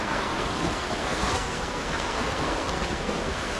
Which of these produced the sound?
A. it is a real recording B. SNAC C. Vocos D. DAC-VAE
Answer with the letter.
B